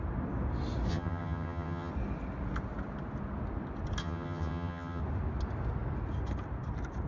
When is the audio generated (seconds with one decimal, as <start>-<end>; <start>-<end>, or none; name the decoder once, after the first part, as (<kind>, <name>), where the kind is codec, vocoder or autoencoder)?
0.9-1.9 (vocoder, HiFi-GAN); 4.0-5.0